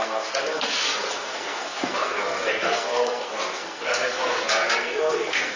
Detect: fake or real fake